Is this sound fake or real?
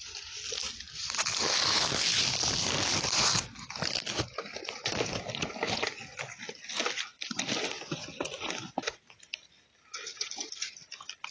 real